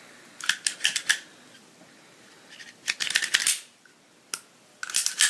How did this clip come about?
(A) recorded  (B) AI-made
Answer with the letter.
A